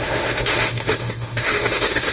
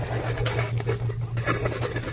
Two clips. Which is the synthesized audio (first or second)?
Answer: first